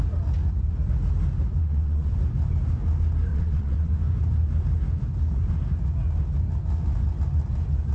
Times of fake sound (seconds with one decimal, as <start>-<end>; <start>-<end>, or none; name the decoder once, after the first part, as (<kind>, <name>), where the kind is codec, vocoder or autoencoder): 1.6-2.1 (vocoder, WaveNeXt); 3.3-3.9